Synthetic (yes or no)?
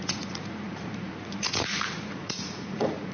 yes